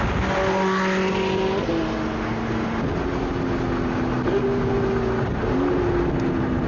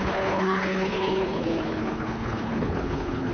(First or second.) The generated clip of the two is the second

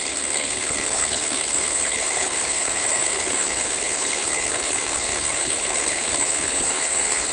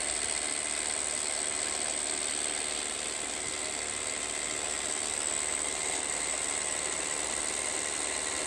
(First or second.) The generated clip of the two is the first